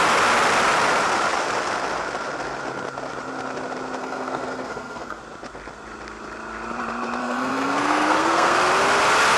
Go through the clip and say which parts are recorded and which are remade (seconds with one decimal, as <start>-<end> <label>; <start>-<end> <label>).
0.0-4.0 recorded; 4.0-5.2 remade; 5.2-7.2 recorded; 7.2-8.6 remade; 8.6-9.4 recorded